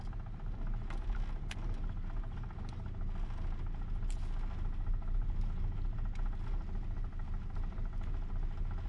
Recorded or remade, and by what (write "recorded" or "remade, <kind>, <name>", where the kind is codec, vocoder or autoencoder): recorded